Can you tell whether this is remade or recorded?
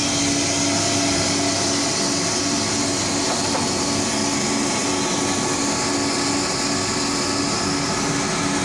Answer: recorded